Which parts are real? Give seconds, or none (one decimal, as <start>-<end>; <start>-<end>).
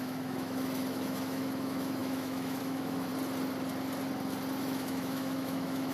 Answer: 3.1-4.6